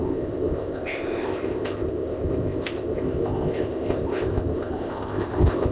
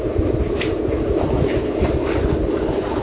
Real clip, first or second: second